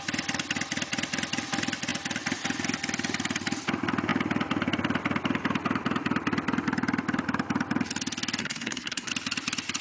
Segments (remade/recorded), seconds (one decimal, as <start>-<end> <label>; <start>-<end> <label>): 0.0-8.4 recorded; 8.4-9.1 remade; 9.1-9.8 recorded